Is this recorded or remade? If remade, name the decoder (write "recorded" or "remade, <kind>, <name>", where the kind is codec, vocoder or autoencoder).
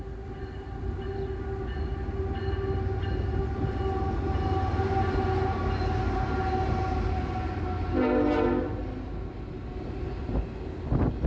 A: recorded